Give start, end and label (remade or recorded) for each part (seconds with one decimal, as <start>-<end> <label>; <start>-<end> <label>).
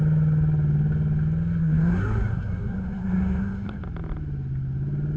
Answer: 0.0-1.6 recorded; 1.6-3.8 remade; 3.8-5.2 recorded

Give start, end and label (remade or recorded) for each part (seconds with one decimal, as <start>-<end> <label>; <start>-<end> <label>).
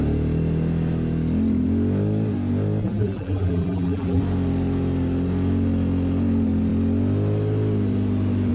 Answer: 0.0-2.8 recorded; 2.8-4.2 remade; 4.2-8.5 recorded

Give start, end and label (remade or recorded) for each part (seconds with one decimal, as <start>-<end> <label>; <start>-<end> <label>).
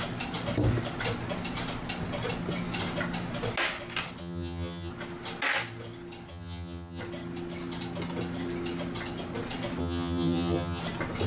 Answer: 0.0-4.2 recorded; 4.2-4.9 remade; 4.9-6.3 recorded; 6.3-7.0 remade; 7.0-9.8 recorded; 9.8-10.8 remade; 10.8-11.3 recorded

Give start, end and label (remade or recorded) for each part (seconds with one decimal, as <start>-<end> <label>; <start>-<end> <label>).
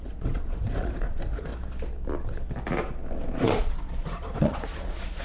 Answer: 0.0-1.5 remade; 1.5-3.4 recorded; 3.4-5.2 remade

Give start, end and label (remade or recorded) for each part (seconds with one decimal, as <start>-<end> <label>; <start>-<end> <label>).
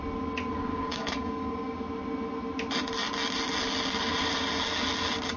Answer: 0.0-0.7 recorded; 0.7-1.8 remade; 1.8-5.4 recorded